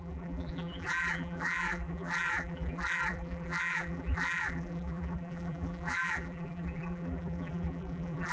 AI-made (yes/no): yes